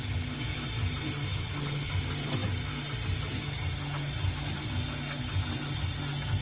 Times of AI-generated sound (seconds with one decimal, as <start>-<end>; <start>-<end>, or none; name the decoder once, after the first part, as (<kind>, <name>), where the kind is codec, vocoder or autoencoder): 1.3-1.9 (codec, HILCodec)

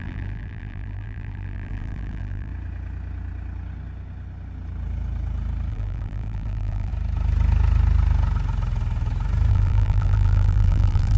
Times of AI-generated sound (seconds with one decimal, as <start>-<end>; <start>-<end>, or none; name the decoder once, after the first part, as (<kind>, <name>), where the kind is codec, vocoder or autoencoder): 0.0-2.5 (vocoder, BigVGAN v2); 5.7-6.9; 9.5-11.2

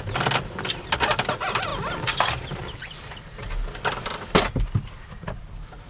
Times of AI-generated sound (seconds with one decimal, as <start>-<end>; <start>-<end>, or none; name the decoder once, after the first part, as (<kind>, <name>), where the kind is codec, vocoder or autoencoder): none

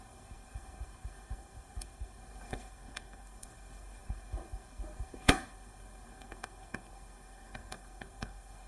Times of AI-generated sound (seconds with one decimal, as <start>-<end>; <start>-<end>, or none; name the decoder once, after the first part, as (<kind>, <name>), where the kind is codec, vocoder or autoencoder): 0.0-8.7 (codec, SNAC)

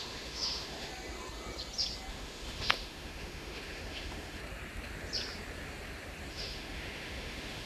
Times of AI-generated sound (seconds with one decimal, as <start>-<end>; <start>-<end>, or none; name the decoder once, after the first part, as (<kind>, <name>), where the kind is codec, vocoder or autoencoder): 0.0-0.9 (autoencoder, DAC-VAE); 2.1-4.4; 6.3-7.7

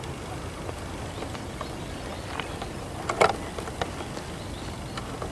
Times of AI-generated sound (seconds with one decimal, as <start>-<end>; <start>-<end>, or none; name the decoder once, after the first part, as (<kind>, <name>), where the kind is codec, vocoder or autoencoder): none

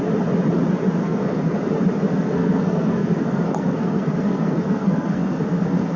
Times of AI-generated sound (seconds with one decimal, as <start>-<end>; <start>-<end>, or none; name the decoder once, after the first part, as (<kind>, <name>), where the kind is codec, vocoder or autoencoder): 1.0-1.6 (codec, SNAC); 2.1-6.0

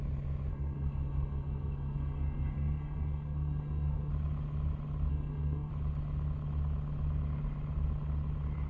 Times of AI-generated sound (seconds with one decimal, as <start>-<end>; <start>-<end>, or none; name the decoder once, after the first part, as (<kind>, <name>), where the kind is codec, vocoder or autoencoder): 0.5-4.1 (codec, SNAC); 5.1-5.7